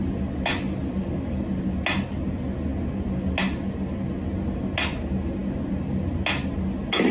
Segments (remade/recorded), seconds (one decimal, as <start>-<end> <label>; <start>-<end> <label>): 0.0-7.1 recorded